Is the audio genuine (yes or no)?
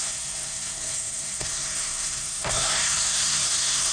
no